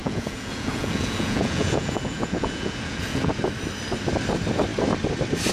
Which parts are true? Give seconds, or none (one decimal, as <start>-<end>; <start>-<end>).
3.3-5.5